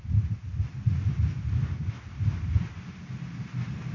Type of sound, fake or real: real